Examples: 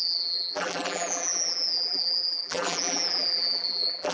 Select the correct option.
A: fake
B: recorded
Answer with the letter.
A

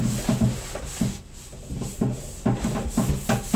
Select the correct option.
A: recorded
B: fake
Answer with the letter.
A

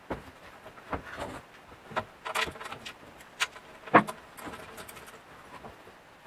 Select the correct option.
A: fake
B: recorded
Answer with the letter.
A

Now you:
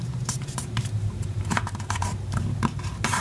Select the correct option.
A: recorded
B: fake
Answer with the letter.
B